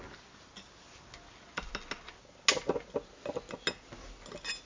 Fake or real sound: real